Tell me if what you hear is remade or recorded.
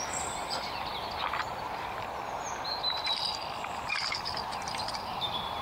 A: recorded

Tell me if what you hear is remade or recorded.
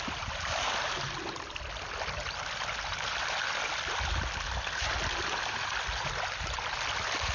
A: recorded